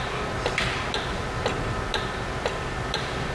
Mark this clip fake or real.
real